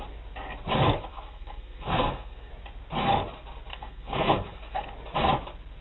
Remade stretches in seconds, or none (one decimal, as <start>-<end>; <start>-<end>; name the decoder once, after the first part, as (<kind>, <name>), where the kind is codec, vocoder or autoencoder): 1.1-2.5 (codec, SNAC); 3.7-4.8